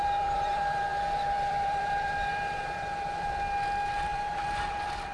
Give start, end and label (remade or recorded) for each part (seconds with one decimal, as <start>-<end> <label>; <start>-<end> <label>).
0.0-5.1 remade